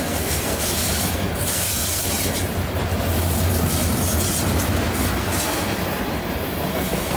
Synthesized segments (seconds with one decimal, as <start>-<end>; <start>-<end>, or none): 0.0-2.0; 4.9-5.8; 6.7-7.2